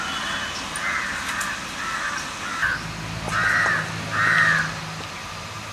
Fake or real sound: real